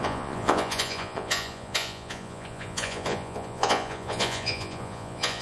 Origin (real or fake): fake